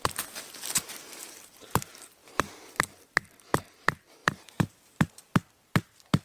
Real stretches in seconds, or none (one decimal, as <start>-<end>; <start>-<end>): 0.0-1.2; 1.7-4.2; 5.1-6.2